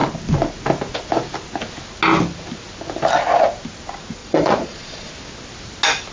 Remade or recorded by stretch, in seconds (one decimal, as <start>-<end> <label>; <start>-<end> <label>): 0.0-4.2 recorded; 4.2-5.1 remade; 5.1-6.1 recorded